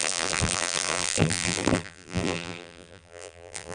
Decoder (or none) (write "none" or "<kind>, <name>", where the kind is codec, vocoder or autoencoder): vocoder, BigVGAN v2